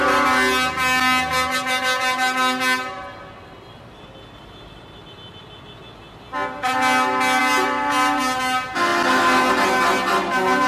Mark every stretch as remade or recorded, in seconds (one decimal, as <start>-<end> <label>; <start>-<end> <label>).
0.0-10.7 recorded